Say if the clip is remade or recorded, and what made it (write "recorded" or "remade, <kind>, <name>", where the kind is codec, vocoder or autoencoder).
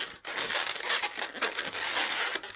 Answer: recorded